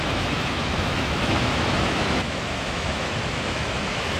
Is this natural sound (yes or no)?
no